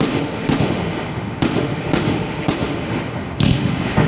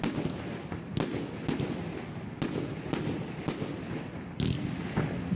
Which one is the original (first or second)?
second